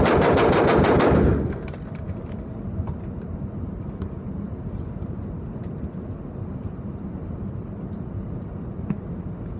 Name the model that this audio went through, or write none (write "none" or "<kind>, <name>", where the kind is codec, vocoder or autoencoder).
none